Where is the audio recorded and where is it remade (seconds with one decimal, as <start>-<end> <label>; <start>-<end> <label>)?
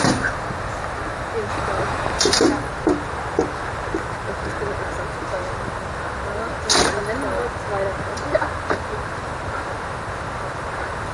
0.0-1.5 recorded; 1.5-2.4 remade; 2.4-11.1 recorded